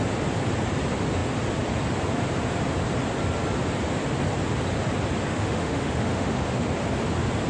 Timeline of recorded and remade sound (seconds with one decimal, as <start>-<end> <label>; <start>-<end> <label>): 0.0-5.3 recorded; 5.3-6.7 remade; 6.7-7.5 recorded

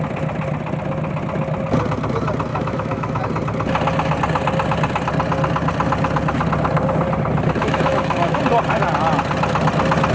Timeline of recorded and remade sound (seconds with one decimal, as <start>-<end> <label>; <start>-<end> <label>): 0.0-2.5 recorded; 2.5-3.2 remade; 3.2-7.6 recorded; 7.6-8.4 remade; 8.4-10.1 recorded

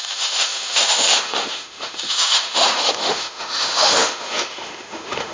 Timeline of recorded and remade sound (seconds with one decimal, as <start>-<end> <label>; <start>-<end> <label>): 0.0-5.3 remade

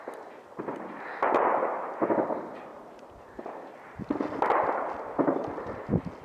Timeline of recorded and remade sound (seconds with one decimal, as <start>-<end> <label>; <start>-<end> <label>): 0.0-1.4 recorded; 1.4-2.3 remade; 2.3-2.7 recorded; 2.7-3.4 remade; 3.4-6.2 recorded

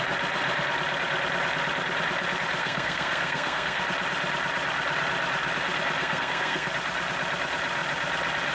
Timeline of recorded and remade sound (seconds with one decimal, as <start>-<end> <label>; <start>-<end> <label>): 0.0-2.6 recorded; 2.6-3.8 remade; 3.8-6.0 recorded; 6.0-6.7 remade; 6.7-8.5 recorded

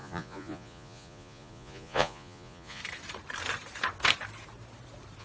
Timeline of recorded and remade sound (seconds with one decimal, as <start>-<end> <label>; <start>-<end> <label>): 0.0-2.8 remade; 2.8-5.2 recorded

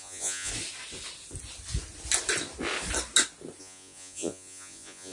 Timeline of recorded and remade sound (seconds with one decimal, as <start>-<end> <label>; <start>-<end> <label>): 0.0-0.5 remade; 0.5-3.6 recorded; 3.6-5.1 remade